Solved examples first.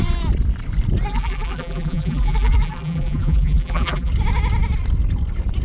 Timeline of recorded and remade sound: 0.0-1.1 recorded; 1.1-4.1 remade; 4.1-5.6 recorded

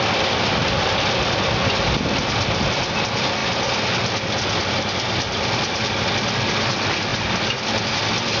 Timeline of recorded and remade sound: 0.0-8.4 recorded

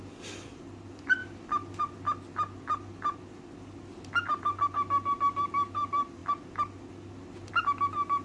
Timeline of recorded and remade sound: 0.0-1.2 recorded; 1.2-1.8 remade; 1.8-6.2 recorded; 6.2-7.5 remade; 7.5-8.2 recorded

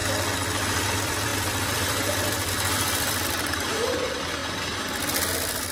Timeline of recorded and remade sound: 0.0-0.8 recorded; 0.8-4.4 remade; 4.4-5.3 recorded; 5.3-5.7 remade

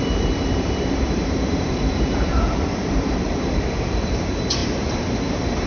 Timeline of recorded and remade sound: 0.0-5.7 remade

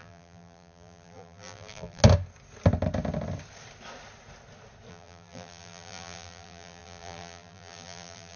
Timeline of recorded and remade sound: 0.0-2.0 remade; 2.0-4.9 recorded; 4.9-8.4 remade

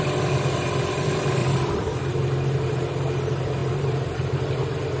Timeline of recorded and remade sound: 0.0-1.4 recorded; 1.4-2.0 remade; 2.0-3.6 recorded; 3.6-5.0 remade